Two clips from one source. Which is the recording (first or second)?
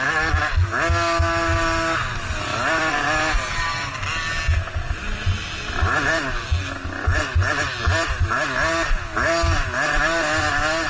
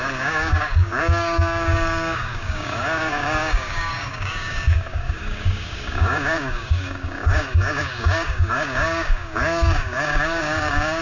first